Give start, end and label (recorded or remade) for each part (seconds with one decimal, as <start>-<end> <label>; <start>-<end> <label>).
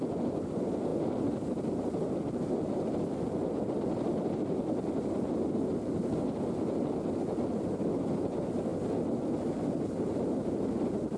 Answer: 0.0-11.2 recorded